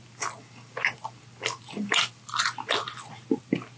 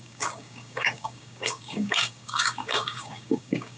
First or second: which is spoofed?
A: second